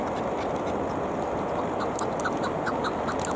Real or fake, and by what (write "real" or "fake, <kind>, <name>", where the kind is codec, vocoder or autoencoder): real